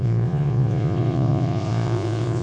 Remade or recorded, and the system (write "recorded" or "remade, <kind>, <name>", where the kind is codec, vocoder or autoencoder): remade, vocoder, Vocos